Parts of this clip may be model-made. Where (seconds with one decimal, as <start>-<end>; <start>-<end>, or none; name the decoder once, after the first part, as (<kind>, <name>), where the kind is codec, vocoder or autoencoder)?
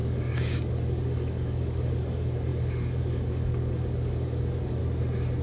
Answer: 0.0-4.8 (codec, DAC)